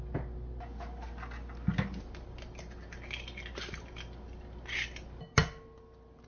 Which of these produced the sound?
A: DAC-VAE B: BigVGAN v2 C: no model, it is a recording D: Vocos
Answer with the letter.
C